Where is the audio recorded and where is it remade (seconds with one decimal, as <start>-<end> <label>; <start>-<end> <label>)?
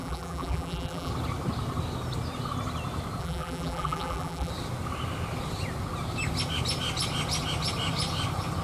0.0-1.1 remade; 1.1-3.2 recorded; 3.2-4.5 remade; 4.5-8.6 recorded